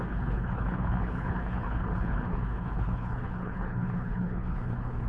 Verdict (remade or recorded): remade